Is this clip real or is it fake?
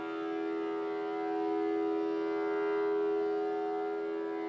real